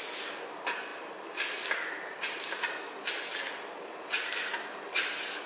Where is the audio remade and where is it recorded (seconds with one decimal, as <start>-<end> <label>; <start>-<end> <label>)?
0.0-5.5 recorded